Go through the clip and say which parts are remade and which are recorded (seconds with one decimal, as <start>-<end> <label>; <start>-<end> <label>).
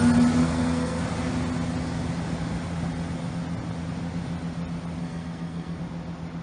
0.0-0.4 recorded; 0.4-1.0 remade; 1.0-5.0 recorded; 5.0-5.8 remade; 5.8-6.4 recorded